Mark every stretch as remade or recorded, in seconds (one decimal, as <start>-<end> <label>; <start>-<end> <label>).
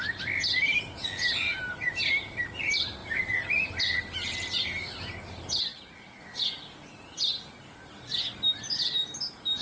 0.0-9.6 recorded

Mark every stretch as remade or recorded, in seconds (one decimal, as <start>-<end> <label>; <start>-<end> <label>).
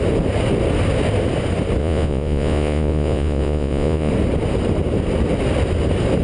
0.0-1.8 recorded; 1.8-4.1 remade; 4.1-6.2 recorded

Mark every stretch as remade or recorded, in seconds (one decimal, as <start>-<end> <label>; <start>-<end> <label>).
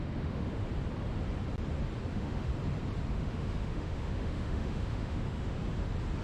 0.0-0.7 remade; 0.7-2.1 recorded; 2.1-2.5 remade; 2.5-3.1 recorded; 3.1-5.6 remade; 5.6-6.2 recorded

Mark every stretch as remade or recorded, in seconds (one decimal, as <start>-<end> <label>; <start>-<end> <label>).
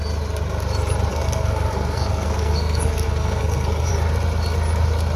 0.0-1.1 recorded; 1.1-3.9 remade; 3.9-5.2 recorded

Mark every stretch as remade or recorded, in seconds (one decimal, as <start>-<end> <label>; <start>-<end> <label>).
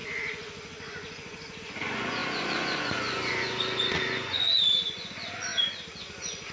0.0-5.5 remade; 5.5-6.0 recorded; 6.0-6.5 remade